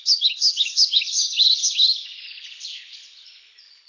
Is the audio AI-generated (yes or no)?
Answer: yes